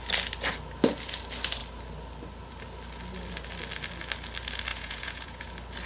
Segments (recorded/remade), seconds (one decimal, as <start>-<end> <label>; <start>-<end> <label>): 0.0-4.7 recorded; 4.7-5.5 remade; 5.5-5.9 recorded